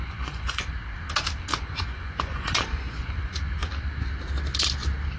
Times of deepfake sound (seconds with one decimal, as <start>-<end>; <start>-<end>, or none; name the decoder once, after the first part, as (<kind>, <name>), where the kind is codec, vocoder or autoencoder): 0.0-0.7 (vocoder, Vocos); 1.5-3.4